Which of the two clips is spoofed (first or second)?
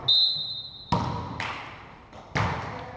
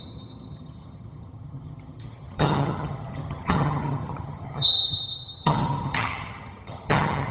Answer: second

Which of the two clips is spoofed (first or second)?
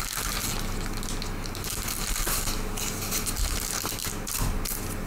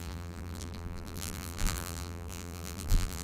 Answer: second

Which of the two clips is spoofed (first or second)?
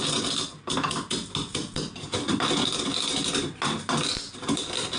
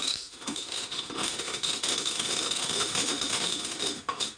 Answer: second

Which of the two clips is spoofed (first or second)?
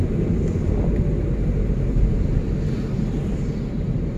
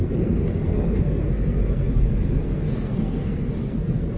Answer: second